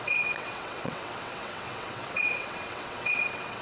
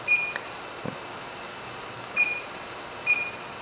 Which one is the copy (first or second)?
first